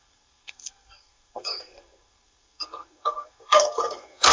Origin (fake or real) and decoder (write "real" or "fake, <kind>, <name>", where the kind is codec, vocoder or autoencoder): fake, codec, SNAC